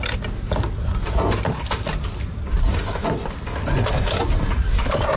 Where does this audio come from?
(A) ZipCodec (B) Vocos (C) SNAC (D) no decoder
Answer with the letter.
D